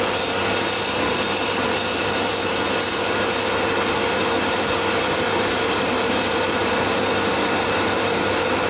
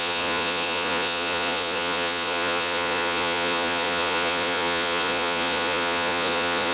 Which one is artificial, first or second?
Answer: second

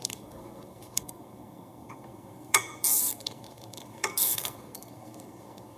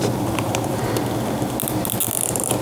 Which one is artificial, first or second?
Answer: first